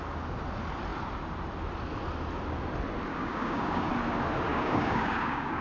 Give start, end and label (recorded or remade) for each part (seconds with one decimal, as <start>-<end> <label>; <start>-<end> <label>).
0.0-3.1 recorded; 3.1-3.9 remade; 3.9-4.5 recorded; 4.5-5.6 remade